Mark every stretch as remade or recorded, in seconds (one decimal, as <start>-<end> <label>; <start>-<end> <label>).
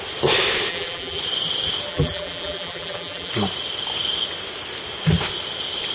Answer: 0.0-0.7 recorded; 0.7-1.2 remade; 1.2-1.9 recorded; 1.9-3.3 remade; 3.3-5.9 recorded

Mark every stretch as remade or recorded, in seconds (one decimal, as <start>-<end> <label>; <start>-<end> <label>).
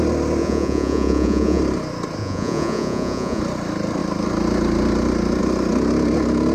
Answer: 0.0-0.4 recorded; 0.4-1.6 remade; 1.6-2.2 recorded; 2.2-3.4 remade; 3.4-6.5 recorded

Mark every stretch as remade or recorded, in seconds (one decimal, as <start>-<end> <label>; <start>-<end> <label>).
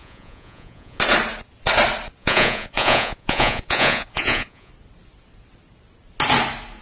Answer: 0.0-1.0 remade; 1.0-2.2 recorded; 2.2-4.7 remade; 4.7-6.8 recorded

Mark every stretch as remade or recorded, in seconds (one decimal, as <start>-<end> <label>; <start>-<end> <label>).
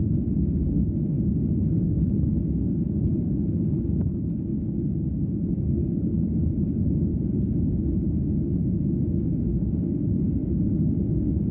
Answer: 0.0-7.1 remade; 7.1-9.1 recorded; 9.1-11.5 remade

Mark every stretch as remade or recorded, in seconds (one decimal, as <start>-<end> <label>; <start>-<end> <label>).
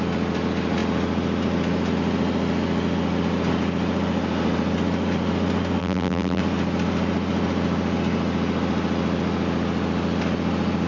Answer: 0.0-5.8 recorded; 5.8-6.4 remade; 6.4-10.9 recorded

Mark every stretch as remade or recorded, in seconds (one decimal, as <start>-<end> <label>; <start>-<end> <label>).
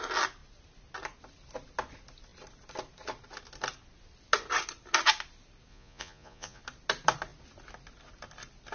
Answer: 0.0-5.7 recorded; 5.7-6.6 remade; 6.6-8.7 recorded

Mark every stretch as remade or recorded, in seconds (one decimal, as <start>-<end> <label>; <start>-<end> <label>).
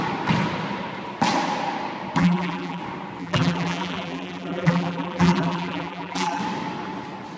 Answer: 0.0-2.2 recorded; 2.2-2.8 remade; 2.8-3.2 recorded; 3.2-6.4 remade; 6.4-7.4 recorded